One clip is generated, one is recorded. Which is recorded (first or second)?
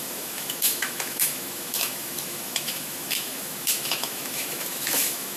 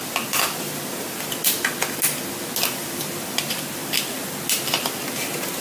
second